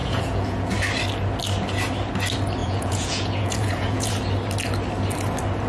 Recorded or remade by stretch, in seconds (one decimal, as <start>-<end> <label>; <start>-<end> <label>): 0.0-0.7 remade; 0.7-2.6 recorded; 2.6-4.1 remade; 4.1-5.7 recorded